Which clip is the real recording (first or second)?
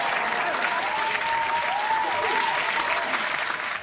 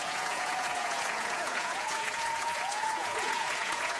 first